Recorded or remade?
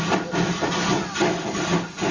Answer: recorded